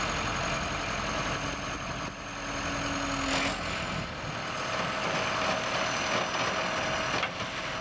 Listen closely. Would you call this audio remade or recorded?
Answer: recorded